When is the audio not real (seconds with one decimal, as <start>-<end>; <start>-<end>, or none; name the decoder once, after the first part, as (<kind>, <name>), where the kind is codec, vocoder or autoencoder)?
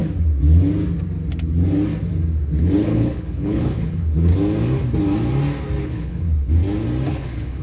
2.6-4.3 (codec, HILCodec); 5.8-6.6; 7.1-7.6